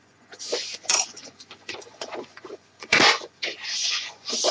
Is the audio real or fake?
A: fake